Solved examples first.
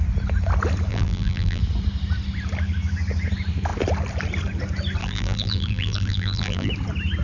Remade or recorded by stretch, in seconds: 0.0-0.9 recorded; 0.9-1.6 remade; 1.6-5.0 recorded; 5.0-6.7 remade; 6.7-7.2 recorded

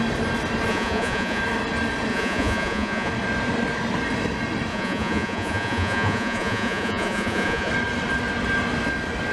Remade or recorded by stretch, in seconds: 0.0-0.7 recorded; 0.7-1.4 remade; 1.4-2.1 recorded; 2.1-3.1 remade; 3.1-4.7 recorded; 4.7-7.7 remade; 7.7-9.3 recorded

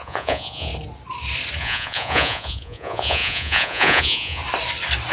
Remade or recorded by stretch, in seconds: 0.0-0.7 remade; 0.7-1.6 recorded; 1.6-4.4 remade; 4.4-5.1 recorded

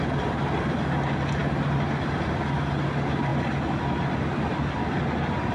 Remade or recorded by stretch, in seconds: 0.0-5.5 recorded

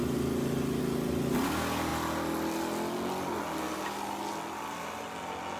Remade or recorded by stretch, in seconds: 0.0-5.6 recorded

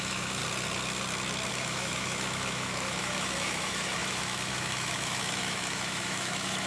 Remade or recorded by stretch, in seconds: 0.0-0.4 remade; 0.4-1.5 recorded; 1.5-6.7 remade